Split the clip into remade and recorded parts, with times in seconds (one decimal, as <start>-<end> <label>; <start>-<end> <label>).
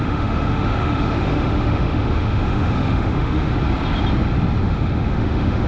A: 0.0-3.5 remade; 3.5-4.6 recorded; 4.6-5.7 remade